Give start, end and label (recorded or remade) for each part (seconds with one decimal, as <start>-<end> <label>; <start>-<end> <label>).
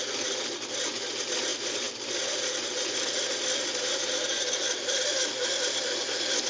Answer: 0.0-6.5 recorded